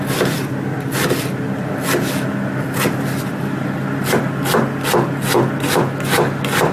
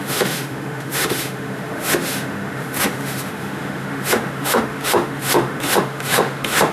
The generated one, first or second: second